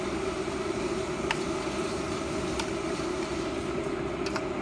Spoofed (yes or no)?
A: no